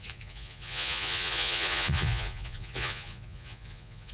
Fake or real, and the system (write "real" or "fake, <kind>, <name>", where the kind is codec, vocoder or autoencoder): fake, vocoder, Vocos